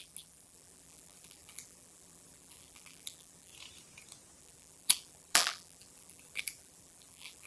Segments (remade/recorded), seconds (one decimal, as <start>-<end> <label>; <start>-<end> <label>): 0.0-3.5 remade; 3.5-4.4 recorded; 4.4-7.5 remade